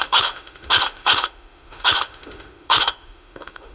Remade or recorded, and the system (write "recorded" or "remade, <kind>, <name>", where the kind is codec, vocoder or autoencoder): remade, autoencoder, DAC-VAE